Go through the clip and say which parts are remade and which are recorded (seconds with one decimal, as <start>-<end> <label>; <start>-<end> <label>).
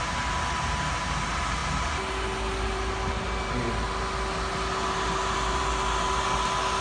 0.0-6.8 recorded